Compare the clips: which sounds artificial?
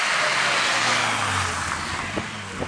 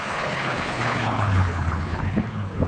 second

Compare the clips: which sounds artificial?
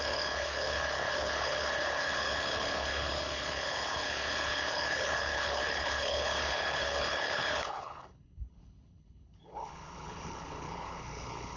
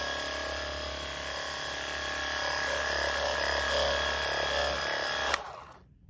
first